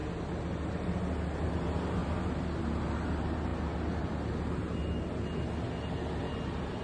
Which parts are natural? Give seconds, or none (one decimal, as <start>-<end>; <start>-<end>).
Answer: 0.0-6.8